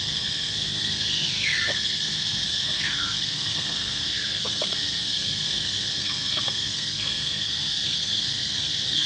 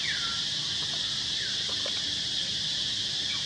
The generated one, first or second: first